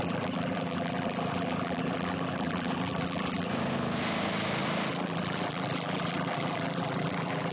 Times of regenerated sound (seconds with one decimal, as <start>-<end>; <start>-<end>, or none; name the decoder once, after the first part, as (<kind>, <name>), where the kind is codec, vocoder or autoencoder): 0.0-3.5 (vocoder, BigVGAN v2); 4.9-7.5